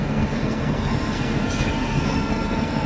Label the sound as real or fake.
fake